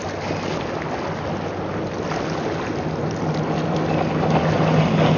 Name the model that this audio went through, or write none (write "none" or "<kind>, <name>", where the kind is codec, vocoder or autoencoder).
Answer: none